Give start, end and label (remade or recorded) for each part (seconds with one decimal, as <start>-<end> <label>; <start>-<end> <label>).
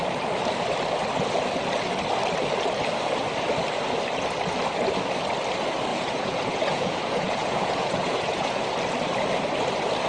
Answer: 0.0-5.9 recorded; 5.9-8.6 remade; 8.6-10.1 recorded